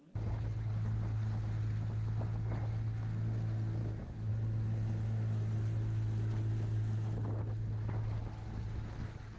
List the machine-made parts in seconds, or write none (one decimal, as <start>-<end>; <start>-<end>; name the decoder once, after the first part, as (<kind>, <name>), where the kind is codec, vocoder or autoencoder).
3.8-4.3 (autoencoder, DAC-VAE)